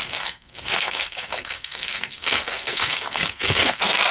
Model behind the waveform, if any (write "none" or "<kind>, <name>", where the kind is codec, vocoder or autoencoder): codec, SNAC